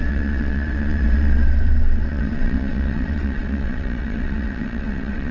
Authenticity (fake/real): fake